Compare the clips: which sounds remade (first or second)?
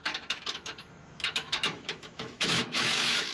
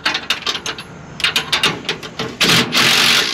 first